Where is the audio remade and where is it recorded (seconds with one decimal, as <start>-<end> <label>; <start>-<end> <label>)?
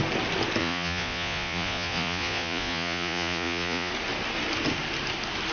0.0-0.6 recorded; 0.6-3.9 remade; 3.9-5.5 recorded